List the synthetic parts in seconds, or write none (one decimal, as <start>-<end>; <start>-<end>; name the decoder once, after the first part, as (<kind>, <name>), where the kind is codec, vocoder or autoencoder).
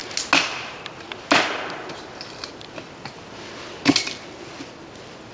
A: none